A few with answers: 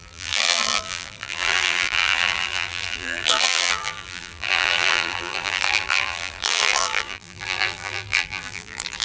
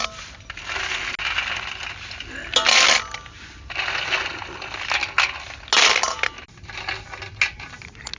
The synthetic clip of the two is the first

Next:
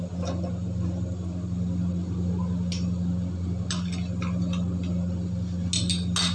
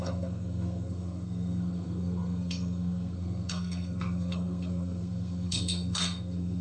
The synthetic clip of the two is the second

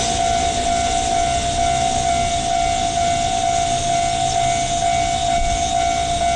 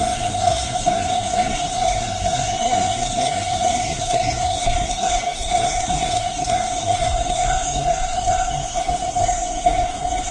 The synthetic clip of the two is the second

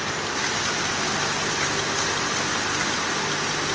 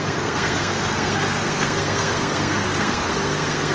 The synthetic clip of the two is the second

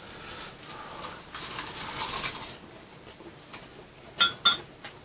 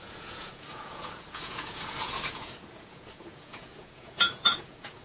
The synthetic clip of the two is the second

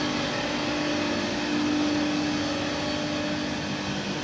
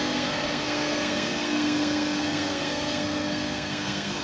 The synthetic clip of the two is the second